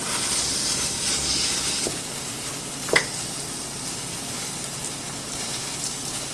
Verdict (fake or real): real